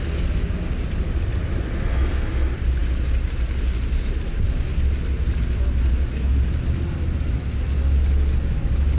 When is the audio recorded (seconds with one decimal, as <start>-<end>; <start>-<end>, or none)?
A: 0.0-9.0